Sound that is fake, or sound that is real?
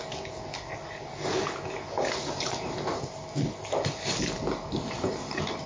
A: real